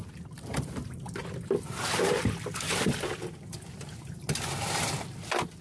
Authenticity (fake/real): real